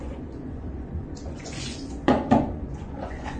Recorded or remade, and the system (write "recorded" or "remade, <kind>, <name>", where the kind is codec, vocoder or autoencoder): remade, vocoder, Vocos